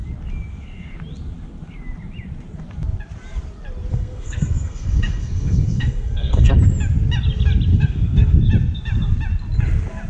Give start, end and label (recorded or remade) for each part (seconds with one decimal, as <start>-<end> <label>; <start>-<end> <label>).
0.0-3.9 recorded; 3.9-6.5 remade; 6.5-7.7 recorded; 7.7-8.4 remade; 8.4-10.1 recorded